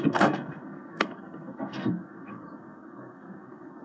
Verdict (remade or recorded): remade